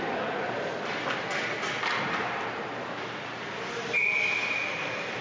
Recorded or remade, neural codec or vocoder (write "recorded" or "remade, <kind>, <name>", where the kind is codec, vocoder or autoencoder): recorded